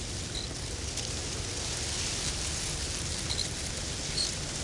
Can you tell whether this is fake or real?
real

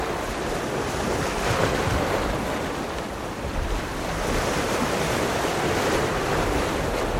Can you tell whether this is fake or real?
real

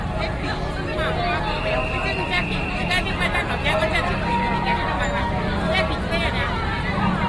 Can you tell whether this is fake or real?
real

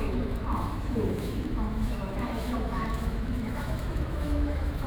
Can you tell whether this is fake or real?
fake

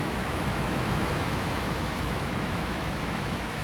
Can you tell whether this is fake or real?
fake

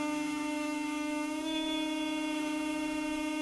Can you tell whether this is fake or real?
fake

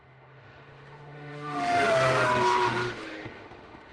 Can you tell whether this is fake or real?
fake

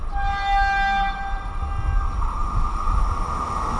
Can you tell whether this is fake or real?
real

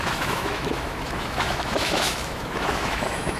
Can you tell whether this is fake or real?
fake